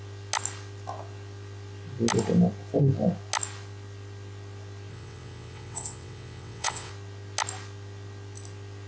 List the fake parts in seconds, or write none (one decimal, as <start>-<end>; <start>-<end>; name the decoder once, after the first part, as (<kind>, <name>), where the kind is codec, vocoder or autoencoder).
4.9-6.9 (vocoder, WaveNeXt)